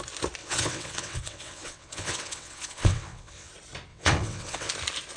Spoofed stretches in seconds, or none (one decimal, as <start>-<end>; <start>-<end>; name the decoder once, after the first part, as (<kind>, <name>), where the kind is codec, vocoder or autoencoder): 0.4-3.5 (vocoder, WaveNeXt); 3.9-4.7